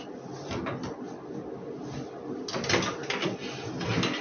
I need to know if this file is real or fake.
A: real